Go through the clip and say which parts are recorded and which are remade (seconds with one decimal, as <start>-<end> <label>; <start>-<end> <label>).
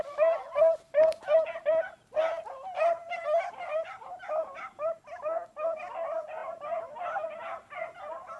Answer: 0.0-8.4 recorded